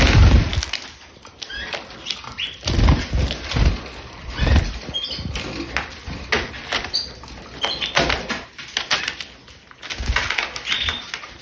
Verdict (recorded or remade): recorded